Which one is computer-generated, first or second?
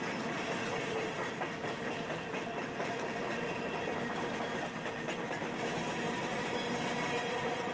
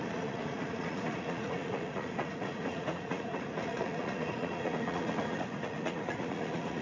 second